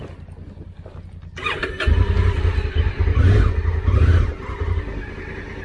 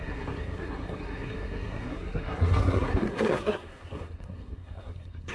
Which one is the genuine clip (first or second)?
first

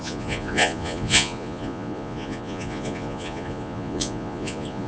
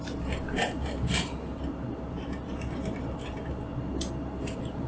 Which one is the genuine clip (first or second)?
second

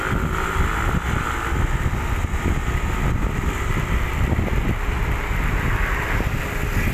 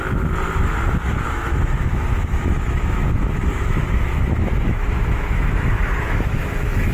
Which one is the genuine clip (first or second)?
first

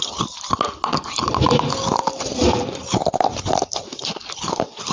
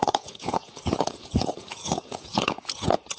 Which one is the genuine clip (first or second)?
first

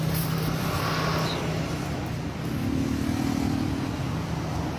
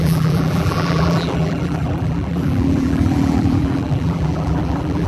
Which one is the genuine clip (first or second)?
first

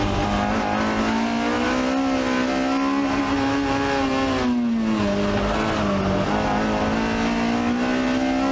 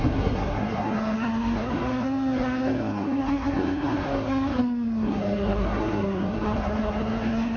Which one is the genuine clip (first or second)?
first